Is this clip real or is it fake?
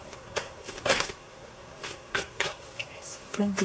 fake